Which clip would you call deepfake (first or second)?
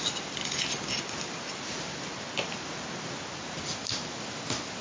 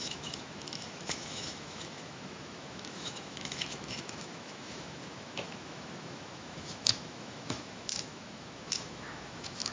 second